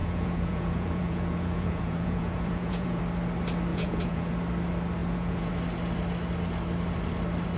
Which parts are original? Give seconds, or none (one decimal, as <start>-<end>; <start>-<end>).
3.0-3.7; 4.3-5.0; 5.5-7.6